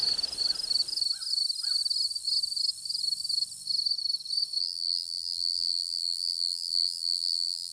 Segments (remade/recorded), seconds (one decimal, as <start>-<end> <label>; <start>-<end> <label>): 0.0-4.6 recorded; 4.6-7.7 remade